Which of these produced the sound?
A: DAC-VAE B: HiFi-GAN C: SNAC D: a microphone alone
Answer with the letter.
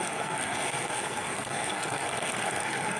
C